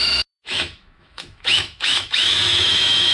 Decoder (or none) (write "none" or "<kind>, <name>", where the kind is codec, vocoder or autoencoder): autoencoder, DAC-VAE